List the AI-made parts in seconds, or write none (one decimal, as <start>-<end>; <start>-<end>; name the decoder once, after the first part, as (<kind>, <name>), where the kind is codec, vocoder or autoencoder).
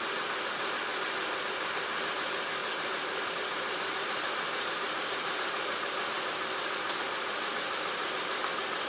2.6-7.0 (vocoder, BigVGAN v2)